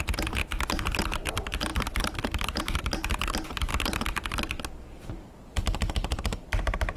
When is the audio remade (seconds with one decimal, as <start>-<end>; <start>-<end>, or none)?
1.7-2.8